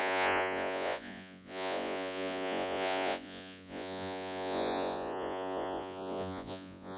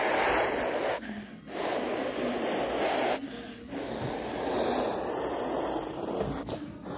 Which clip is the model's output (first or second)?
first